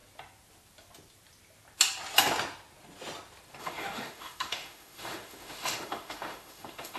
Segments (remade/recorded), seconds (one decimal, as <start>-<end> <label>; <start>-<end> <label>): 0.0-3.6 recorded; 3.6-7.0 remade